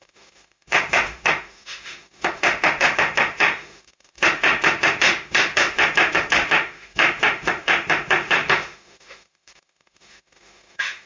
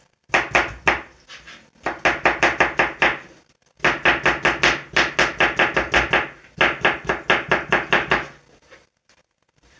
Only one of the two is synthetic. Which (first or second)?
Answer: first